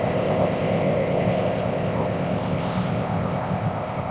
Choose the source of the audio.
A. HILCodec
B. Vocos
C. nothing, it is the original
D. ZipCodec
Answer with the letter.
D